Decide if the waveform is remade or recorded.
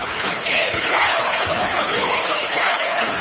remade